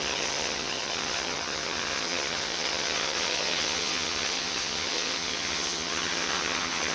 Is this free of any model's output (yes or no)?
no